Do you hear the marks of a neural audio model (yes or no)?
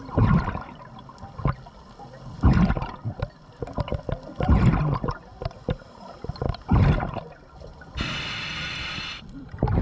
no